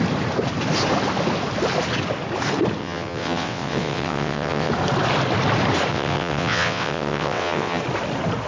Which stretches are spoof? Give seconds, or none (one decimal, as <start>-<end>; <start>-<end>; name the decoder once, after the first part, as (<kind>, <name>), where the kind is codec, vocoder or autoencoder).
2.8-4.7 (vocoder, WaveNeXt); 5.9-7.8

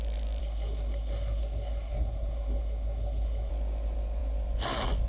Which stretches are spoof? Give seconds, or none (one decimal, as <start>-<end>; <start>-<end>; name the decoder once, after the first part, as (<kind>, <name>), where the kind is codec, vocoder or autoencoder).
0.4-3.5 (codec, SNAC)

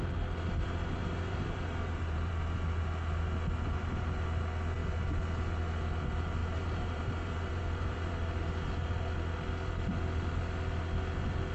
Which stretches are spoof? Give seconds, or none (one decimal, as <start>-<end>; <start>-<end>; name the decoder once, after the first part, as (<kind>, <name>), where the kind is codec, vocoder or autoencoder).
1.0-2.3 (vocoder, BigVGAN v2); 6.4-8.1

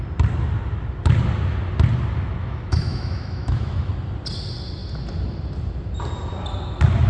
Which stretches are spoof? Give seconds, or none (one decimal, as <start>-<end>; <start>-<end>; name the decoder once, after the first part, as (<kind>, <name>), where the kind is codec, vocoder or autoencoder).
2.4-3.9 (autoencoder, DAC-VAE)

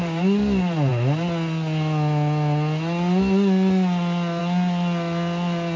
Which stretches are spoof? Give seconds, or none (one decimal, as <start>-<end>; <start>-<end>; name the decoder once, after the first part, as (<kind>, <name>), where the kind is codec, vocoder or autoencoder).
none

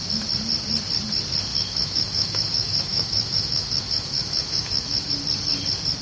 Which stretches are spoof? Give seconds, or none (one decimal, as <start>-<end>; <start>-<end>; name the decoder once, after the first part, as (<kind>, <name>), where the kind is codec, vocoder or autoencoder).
1.5-5.1 (autoencoder, DAC-VAE)

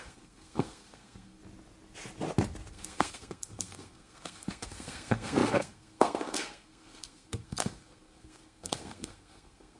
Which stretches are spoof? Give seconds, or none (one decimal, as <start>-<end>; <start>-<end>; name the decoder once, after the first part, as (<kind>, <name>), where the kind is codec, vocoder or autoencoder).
0.0-1.4 (codec, SNAC); 2.7-9.8

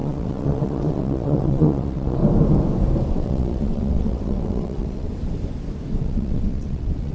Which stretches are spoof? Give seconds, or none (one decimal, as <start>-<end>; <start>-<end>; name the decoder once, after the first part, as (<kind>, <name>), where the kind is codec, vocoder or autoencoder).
0.0-2.2 (vocoder, WaveNeXt); 3.1-5.1; 6.0-7.1